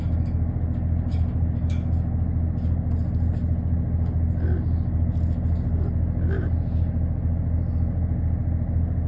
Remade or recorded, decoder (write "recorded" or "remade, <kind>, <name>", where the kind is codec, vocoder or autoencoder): recorded